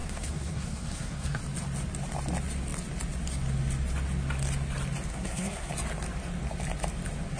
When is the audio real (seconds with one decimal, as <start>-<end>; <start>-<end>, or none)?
1.4-5.1; 5.7-7.4